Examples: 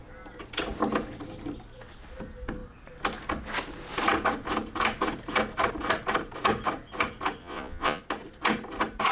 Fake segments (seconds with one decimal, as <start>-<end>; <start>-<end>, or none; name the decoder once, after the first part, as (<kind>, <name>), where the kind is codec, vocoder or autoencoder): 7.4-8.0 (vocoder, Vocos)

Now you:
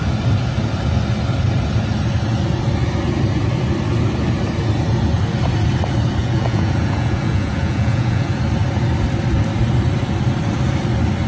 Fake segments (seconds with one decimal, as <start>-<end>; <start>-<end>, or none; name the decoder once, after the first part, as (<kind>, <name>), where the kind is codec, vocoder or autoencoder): 6.2-8.4 (vocoder, Vocos)

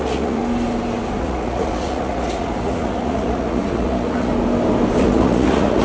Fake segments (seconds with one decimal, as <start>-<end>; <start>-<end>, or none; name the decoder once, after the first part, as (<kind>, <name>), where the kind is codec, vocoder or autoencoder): 0.0-0.4 (vocoder, Vocos); 1.2-4.3; 5.0-5.8

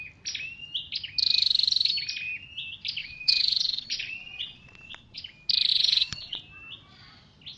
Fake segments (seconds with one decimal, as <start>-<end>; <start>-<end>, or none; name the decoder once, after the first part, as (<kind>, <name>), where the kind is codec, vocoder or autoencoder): 3.0-5.2 (vocoder, Vocos); 5.7-6.4

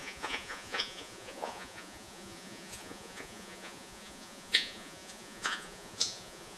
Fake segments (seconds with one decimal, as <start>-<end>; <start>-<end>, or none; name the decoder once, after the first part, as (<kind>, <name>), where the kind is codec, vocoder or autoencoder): 0.0-6.6 (vocoder, Vocos)